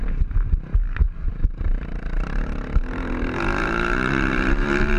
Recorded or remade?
remade